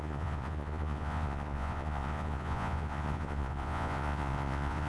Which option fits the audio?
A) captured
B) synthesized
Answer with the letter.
B